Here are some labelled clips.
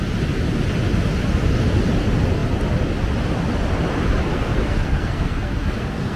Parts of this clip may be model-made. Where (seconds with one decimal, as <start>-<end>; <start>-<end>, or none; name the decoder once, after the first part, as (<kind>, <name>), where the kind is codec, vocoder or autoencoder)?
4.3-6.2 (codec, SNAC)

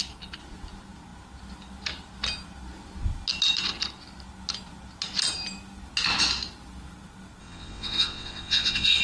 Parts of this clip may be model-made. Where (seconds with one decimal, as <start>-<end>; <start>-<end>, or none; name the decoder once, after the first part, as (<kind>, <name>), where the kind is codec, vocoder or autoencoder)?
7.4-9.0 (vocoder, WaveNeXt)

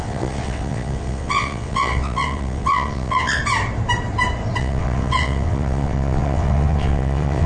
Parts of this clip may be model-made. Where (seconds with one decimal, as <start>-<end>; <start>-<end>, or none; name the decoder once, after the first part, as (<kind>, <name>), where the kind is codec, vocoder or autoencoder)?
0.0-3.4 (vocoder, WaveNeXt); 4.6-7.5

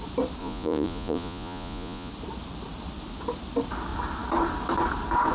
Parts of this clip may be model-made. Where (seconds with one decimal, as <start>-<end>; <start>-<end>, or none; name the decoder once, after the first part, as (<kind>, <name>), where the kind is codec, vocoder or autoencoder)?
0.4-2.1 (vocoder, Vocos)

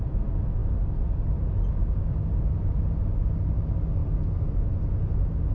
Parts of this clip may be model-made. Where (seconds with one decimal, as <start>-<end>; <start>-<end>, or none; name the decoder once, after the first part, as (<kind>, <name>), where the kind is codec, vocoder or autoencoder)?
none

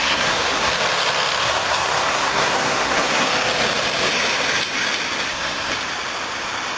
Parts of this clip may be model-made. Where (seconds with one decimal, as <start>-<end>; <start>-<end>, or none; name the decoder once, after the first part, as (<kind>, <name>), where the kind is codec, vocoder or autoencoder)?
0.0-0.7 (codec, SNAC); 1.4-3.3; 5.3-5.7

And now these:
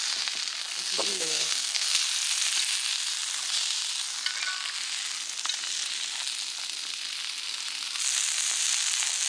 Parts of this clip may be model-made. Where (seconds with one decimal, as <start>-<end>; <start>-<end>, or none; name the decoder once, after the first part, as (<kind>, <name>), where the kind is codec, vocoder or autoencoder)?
1.1-2.0 (codec, SNAC)

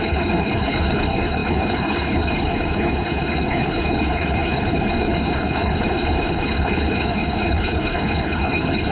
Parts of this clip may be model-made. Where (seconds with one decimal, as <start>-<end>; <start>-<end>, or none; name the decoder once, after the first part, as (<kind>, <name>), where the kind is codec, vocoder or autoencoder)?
0.0-8.9 (codec, HILCodec)